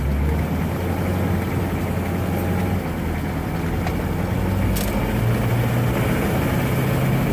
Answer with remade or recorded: recorded